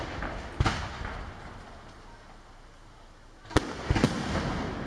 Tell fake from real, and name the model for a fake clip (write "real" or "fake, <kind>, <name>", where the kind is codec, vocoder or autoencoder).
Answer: real